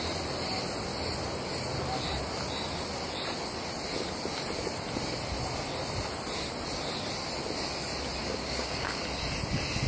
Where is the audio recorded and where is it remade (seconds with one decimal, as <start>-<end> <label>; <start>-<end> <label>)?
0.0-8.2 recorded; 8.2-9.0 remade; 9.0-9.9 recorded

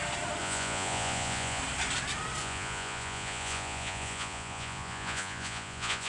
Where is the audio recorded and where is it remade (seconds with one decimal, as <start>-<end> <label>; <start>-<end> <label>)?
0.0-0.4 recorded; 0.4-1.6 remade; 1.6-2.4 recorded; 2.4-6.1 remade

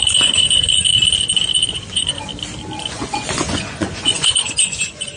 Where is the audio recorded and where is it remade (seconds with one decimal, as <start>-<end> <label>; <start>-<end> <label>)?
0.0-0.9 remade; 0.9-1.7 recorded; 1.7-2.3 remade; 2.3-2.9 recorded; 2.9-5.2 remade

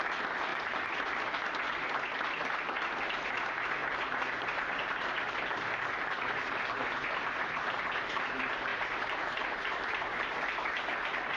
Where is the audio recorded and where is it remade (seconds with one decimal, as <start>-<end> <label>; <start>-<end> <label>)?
0.0-0.5 recorded; 0.5-1.1 remade; 1.1-3.8 recorded; 3.8-6.8 remade; 6.8-8.7 recorded; 8.7-10.4 remade; 10.4-11.4 recorded

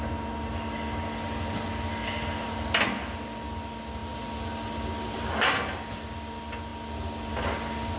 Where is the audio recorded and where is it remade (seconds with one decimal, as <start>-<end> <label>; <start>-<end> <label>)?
0.0-8.0 recorded

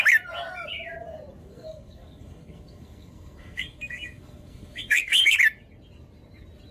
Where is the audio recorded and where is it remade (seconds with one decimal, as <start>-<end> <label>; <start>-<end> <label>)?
0.0-1.4 recorded; 1.4-5.4 remade; 5.4-6.7 recorded